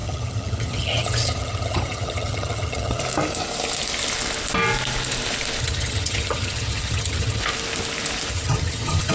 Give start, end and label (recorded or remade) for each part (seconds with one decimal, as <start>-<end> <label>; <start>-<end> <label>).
0.0-3.0 remade; 3.0-5.6 recorded; 5.6-7.4 remade; 7.4-8.3 recorded; 8.3-9.1 remade